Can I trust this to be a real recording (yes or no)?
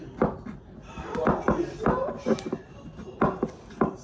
no